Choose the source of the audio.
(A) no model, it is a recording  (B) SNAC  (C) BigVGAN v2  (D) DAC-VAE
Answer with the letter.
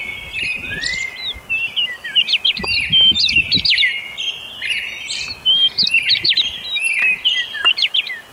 A